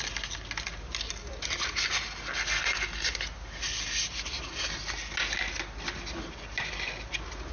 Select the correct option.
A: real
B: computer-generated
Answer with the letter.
A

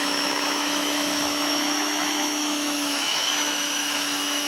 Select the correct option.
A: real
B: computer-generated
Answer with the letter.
B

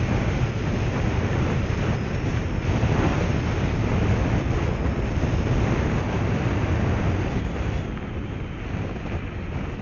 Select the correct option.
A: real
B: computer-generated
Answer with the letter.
A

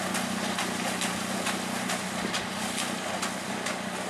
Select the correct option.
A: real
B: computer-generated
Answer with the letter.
A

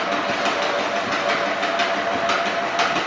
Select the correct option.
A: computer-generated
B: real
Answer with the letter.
B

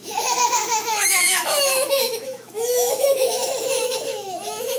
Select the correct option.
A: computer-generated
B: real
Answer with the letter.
A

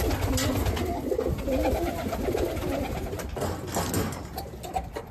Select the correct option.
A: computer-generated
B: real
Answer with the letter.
B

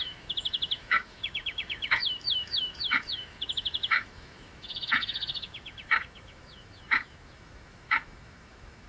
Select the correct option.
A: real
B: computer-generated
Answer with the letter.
B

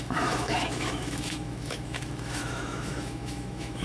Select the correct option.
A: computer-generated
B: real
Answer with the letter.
A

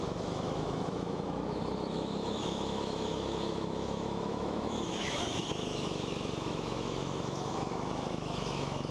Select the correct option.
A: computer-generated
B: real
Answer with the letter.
A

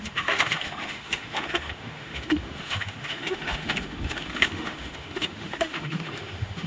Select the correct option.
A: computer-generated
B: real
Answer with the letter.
A